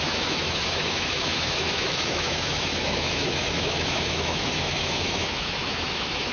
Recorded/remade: remade